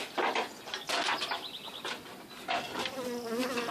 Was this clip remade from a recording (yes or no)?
no